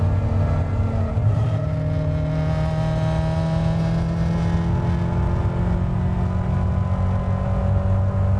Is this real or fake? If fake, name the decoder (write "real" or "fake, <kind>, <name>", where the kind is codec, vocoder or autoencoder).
real